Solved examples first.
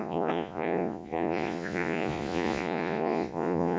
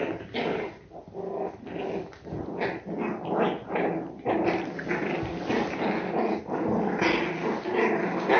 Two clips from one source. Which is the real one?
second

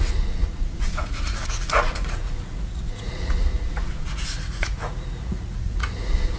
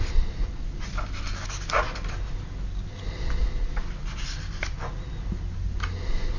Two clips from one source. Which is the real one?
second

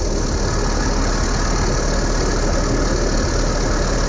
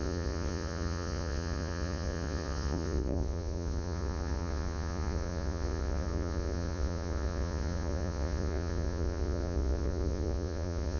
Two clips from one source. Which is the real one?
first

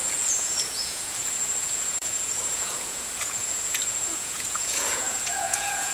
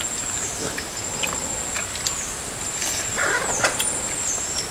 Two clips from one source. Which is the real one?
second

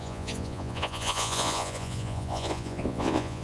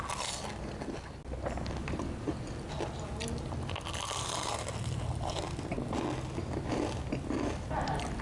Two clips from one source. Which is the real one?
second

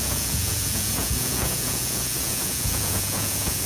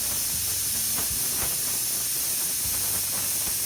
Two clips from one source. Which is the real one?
second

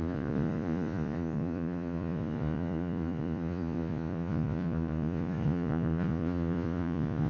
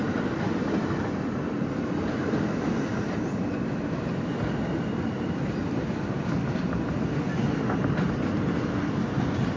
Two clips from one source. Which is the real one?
second